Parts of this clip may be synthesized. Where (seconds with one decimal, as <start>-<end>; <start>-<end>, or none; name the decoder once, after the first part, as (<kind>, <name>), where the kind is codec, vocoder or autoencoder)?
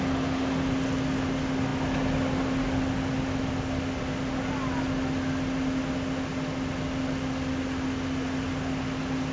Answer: none